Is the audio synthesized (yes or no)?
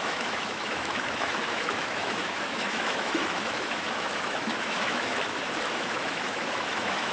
yes